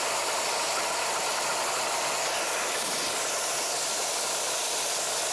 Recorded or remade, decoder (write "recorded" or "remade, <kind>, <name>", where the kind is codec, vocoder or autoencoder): recorded